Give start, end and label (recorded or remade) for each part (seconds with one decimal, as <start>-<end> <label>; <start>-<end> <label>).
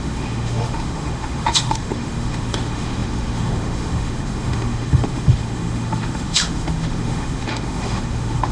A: 0.0-8.5 remade